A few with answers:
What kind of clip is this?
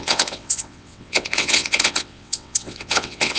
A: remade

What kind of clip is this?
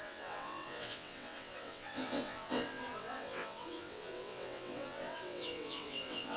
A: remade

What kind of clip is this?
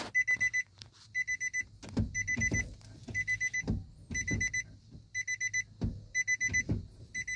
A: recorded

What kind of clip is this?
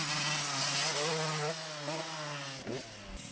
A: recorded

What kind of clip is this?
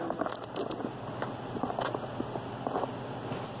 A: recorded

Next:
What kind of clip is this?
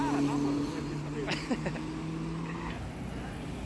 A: recorded